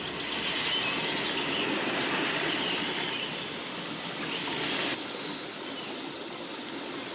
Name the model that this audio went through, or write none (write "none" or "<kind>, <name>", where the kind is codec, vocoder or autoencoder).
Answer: none